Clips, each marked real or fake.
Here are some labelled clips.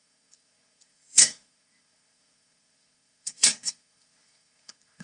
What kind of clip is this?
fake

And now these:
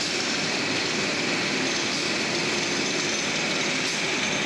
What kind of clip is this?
real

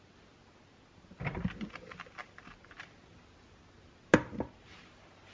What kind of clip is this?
real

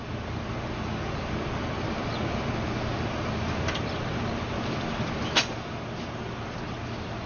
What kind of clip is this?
real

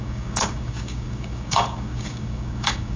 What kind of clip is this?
fake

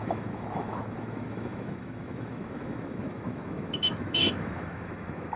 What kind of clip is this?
fake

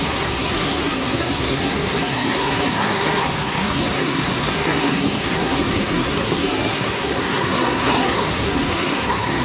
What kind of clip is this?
fake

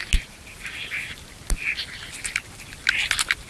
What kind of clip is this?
real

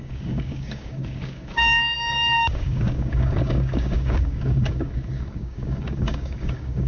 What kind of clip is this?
fake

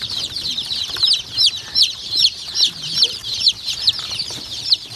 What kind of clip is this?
fake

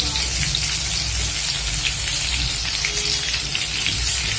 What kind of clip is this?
real